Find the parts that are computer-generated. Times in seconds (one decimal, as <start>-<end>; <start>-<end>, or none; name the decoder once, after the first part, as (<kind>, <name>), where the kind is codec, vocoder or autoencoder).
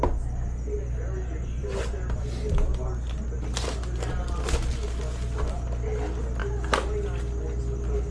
1.6-2.2 (vocoder, BigVGAN v2)